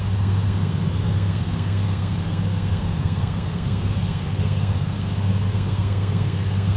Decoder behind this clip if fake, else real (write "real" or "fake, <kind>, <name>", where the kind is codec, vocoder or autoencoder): fake, codec, SNAC